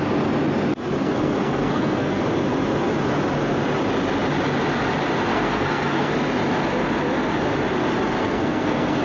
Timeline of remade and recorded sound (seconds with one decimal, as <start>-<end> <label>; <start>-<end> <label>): 0.0-1.0 recorded; 1.0-2.2 remade; 2.2-5.3 recorded; 5.3-6.1 remade; 6.1-8.2 recorded; 8.2-9.0 remade